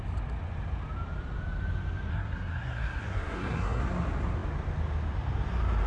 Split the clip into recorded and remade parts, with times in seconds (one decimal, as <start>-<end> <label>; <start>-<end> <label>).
0.0-2.1 recorded; 2.1-3.8 remade; 3.8-5.9 recorded